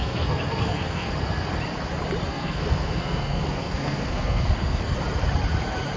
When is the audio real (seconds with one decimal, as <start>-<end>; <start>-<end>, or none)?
1.1-2.3; 4.8-6.0

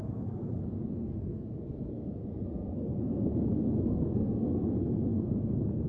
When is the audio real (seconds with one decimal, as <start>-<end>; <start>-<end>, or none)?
0.4-0.9; 3.3-3.8

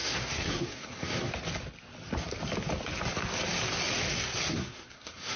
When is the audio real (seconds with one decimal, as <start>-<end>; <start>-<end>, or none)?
1.3-4.6